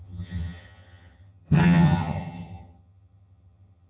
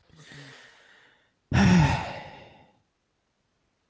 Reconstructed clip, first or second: first